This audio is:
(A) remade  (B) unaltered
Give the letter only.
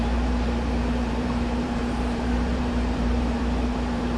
A